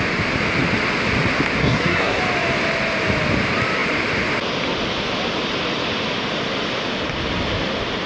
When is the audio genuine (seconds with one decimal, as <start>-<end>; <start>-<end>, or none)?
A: 0.0-1.6; 2.2-8.1